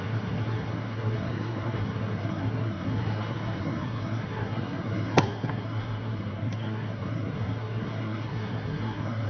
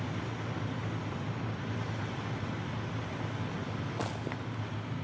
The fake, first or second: first